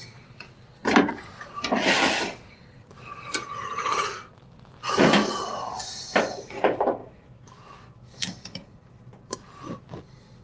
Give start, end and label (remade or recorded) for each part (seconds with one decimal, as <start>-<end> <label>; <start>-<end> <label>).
0.0-7.0 recorded; 7.0-8.3 remade; 8.3-10.4 recorded